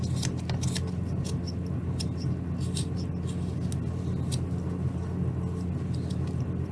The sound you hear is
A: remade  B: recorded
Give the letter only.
B